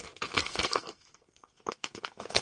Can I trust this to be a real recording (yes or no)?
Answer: no